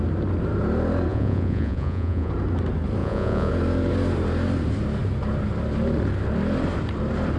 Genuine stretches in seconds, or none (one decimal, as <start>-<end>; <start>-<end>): 0.0-1.1; 2.3-3.0; 3.5-7.4